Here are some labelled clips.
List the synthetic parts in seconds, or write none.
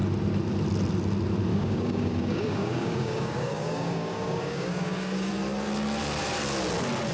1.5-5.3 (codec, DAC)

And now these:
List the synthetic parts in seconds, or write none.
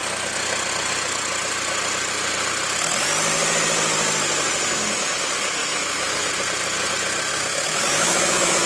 5.6-6.3 (autoencoder, DAC-VAE); 7.3-8.7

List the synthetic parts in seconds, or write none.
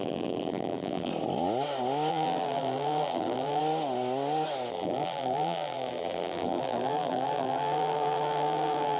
0.0-1.1 (vocoder, BigVGAN v2); 2.1-3.6; 4.7-9.0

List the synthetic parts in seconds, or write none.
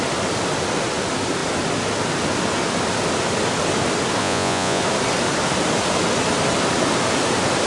4.2-4.8 (vocoder, Vocos)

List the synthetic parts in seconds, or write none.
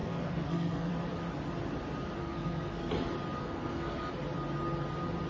0.0-0.9 (codec, SNAC); 2.2-2.9; 3.4-4.1